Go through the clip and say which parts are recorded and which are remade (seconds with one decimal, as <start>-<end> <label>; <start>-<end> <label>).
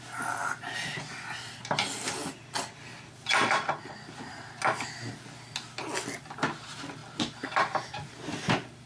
0.0-8.9 recorded